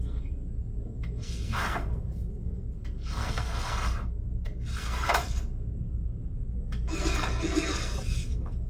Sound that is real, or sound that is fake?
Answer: fake